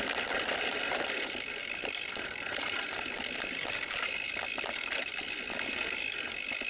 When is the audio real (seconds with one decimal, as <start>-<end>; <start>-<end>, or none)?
0.0-6.7